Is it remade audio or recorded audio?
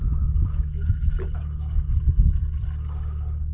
recorded